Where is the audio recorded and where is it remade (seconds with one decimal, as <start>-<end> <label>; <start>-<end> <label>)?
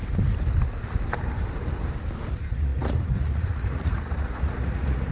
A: 0.0-2.3 recorded; 2.3-5.1 remade